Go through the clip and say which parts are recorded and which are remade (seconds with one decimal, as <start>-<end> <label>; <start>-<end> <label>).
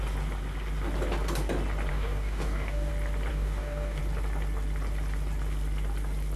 0.0-1.9 recorded; 1.9-2.9 remade; 2.9-3.3 recorded; 3.3-4.0 remade; 4.0-6.4 recorded